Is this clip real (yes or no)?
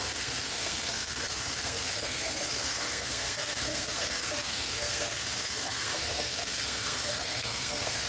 no